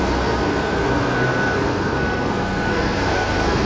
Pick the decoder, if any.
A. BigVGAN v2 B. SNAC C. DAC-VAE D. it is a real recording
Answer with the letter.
B